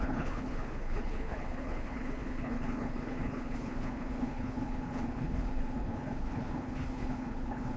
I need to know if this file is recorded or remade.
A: remade